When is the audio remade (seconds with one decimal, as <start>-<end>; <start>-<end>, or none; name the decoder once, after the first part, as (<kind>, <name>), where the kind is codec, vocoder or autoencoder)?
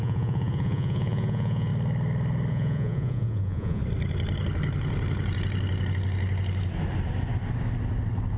0.0-1.7 (vocoder, Vocos); 2.5-3.8